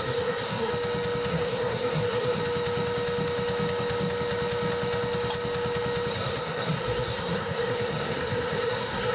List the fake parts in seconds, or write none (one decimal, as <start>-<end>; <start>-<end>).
0.0-0.7; 1.3-2.4; 6.1-9.1